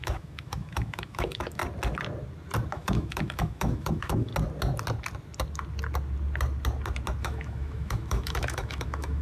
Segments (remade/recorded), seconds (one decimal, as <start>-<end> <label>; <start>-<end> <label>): 0.0-1.6 remade; 1.6-2.7 recorded; 2.7-4.3 remade; 4.3-7.2 recorded; 7.2-9.2 remade